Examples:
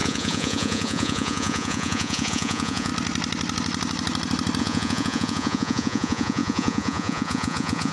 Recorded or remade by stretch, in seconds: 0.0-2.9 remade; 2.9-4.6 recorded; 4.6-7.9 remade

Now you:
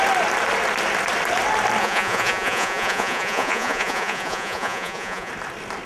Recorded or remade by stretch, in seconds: 0.0-1.8 recorded; 1.8-5.3 remade; 5.3-5.9 recorded

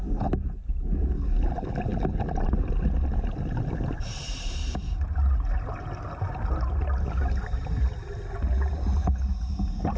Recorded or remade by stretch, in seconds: 0.0-10.0 recorded